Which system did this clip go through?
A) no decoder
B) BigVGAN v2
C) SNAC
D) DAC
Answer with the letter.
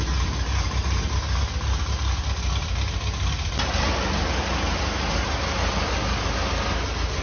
A